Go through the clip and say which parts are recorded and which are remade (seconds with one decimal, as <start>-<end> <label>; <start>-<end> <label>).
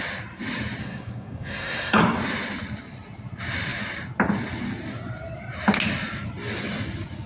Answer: 0.0-0.8 recorded; 0.8-2.0 remade; 2.0-7.3 recorded